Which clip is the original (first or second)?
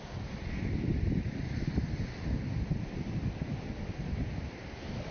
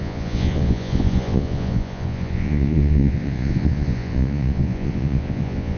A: first